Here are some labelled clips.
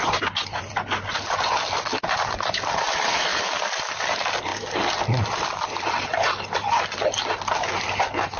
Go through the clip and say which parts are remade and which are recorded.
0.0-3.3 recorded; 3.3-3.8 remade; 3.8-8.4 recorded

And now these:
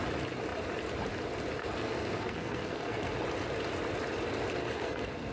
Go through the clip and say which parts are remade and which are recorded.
0.0-1.6 recorded; 1.6-3.1 remade; 3.1-4.6 recorded; 4.6-5.3 remade

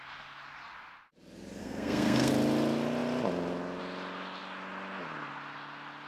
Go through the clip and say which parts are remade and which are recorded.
0.0-1.6 recorded; 1.6-2.3 remade; 2.3-6.1 recorded

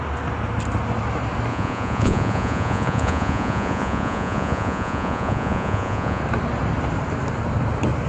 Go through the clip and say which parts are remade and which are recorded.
0.0-1.5 recorded; 1.5-6.2 remade; 6.2-8.1 recorded

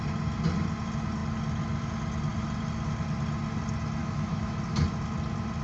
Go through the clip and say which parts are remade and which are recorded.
0.0-4.0 recorded; 4.0-4.6 remade; 4.6-5.6 recorded

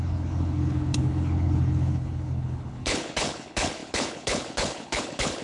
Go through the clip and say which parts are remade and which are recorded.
0.0-5.4 remade

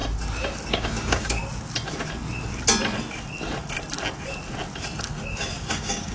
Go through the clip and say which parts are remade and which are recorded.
0.0-0.7 recorded; 0.7-1.4 remade; 1.4-5.1 recorded; 5.1-6.1 remade

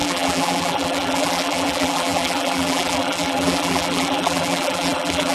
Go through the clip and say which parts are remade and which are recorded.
0.0-5.3 remade